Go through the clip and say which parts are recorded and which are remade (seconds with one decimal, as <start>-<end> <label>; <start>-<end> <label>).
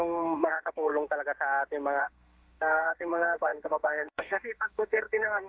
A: 0.0-0.9 remade; 0.9-2.0 recorded; 2.0-5.5 remade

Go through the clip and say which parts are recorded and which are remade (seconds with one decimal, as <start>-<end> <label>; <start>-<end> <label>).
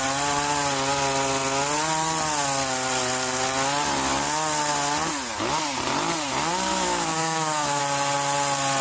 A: 0.0-6.7 recorded; 6.7-7.8 remade; 7.8-8.8 recorded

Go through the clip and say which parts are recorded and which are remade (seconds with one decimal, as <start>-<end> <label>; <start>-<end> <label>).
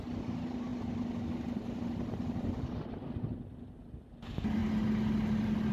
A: 0.0-5.7 recorded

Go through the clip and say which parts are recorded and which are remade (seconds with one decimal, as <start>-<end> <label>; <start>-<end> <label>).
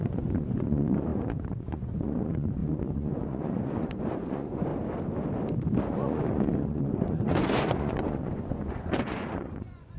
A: 0.0-4.7 remade; 4.7-5.9 recorded; 5.9-10.0 remade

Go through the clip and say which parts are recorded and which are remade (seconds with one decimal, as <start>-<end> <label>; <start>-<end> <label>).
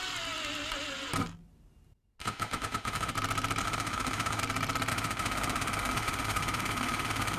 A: 0.0-2.2 recorded; 2.2-3.1 remade; 3.1-3.6 recorded; 3.6-4.4 remade; 4.4-4.9 recorded; 4.9-7.4 remade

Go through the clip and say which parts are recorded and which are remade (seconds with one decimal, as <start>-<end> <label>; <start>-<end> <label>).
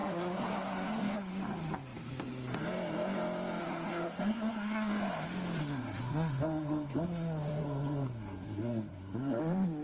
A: 0.0-1.3 remade; 1.3-3.6 recorded; 3.6-4.9 remade; 4.9-5.6 recorded; 5.6-9.4 remade; 9.4-9.8 recorded